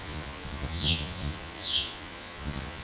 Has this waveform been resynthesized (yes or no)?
yes